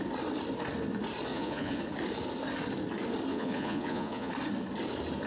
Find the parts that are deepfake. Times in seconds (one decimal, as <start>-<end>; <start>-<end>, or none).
1.3-1.8; 3.3-4.3